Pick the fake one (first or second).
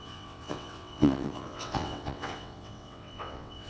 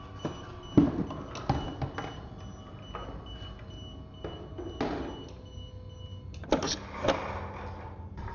first